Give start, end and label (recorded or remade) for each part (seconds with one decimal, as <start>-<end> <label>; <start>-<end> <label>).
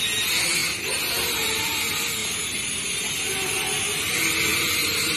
0.0-0.6 recorded; 0.6-1.1 remade; 1.1-2.2 recorded; 2.2-3.1 remade; 3.1-4.5 recorded; 4.5-5.2 remade